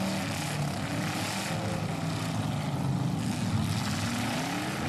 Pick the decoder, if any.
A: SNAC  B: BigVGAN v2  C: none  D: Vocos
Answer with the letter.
C